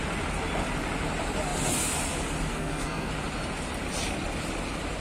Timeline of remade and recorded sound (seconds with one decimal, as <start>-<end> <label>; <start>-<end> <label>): 0.0-2.5 recorded; 2.5-3.1 remade; 3.1-5.0 recorded